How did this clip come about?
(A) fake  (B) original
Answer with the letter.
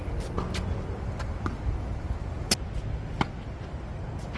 B